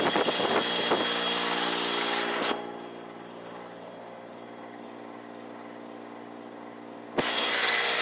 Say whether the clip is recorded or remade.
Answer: recorded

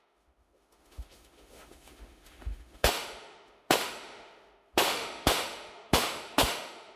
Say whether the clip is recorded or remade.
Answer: remade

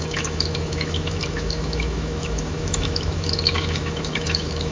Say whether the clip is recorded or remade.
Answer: remade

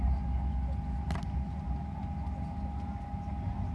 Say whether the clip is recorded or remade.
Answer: recorded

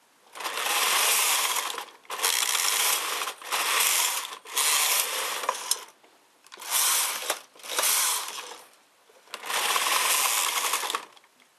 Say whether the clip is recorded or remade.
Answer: recorded